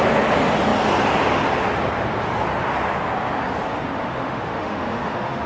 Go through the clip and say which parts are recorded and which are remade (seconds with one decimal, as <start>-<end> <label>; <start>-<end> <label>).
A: 0.0-4.0 recorded; 4.0-5.5 remade